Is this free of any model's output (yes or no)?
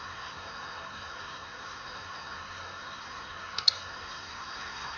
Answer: no